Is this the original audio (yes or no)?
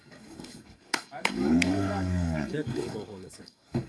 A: no